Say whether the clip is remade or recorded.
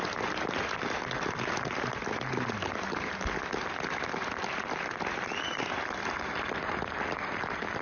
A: recorded